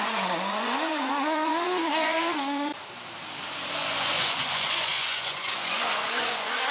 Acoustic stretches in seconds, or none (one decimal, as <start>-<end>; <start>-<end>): 2.7-3.7